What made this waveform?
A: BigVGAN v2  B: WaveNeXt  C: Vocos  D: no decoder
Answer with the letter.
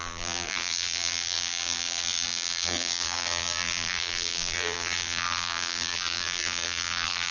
A